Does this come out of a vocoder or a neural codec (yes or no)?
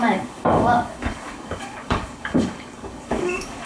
yes